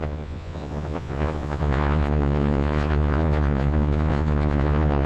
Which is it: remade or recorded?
remade